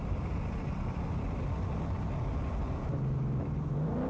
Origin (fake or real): real